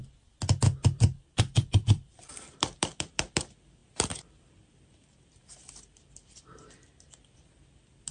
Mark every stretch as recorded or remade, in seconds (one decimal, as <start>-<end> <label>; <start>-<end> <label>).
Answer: 0.0-0.6 recorded; 0.6-8.1 remade